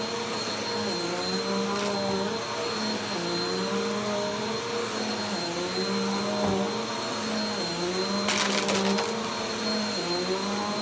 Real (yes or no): yes